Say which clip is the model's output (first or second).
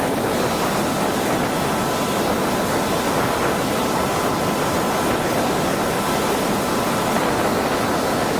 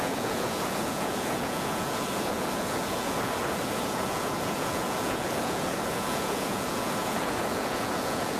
second